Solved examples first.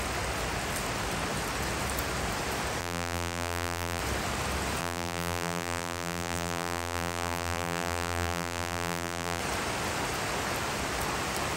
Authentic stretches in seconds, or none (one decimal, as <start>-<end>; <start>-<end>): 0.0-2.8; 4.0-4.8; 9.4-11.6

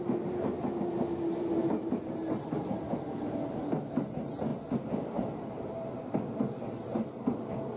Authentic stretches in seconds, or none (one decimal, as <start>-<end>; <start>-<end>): 0.0-7.8

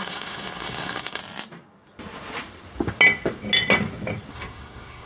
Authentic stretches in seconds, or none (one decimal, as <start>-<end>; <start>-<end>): 1.2-4.3

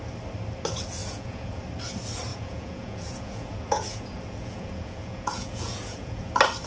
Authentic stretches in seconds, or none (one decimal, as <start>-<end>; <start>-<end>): 0.0-1.0; 1.6-2.3; 6.3-6.7

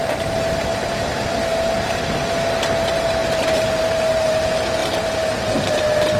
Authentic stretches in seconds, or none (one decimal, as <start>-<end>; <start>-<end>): 0.0-6.2

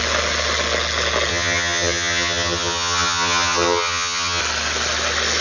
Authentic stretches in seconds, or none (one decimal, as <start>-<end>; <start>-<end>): 0.0-1.3; 4.4-5.4

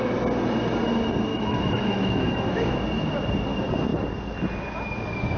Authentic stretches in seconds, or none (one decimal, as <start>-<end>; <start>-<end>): 0.0-1.3; 2.7-5.4

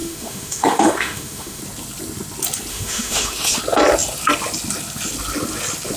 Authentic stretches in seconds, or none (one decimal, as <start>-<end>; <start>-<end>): 1.6-2.7; 3.6-6.0